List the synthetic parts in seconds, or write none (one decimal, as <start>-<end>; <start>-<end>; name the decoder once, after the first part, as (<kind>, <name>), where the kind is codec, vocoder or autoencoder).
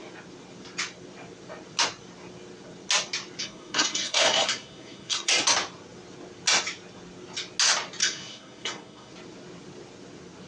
3.4-5.3 (codec, SNAC); 8.0-9.1